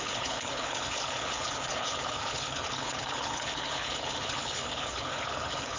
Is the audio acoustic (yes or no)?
no